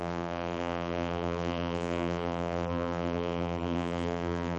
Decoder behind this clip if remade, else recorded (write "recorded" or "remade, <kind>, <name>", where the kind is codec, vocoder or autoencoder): remade, vocoder, BigVGAN v2